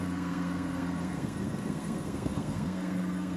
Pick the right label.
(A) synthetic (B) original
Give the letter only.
A